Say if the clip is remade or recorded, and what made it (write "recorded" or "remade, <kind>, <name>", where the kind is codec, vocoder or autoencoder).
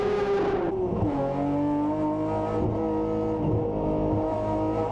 recorded